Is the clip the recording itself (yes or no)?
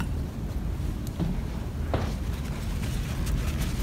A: yes